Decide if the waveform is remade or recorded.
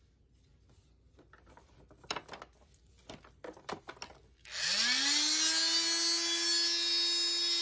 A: recorded